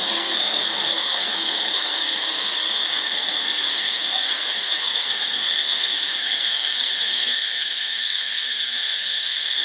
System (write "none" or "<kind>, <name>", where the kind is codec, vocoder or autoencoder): codec, SNAC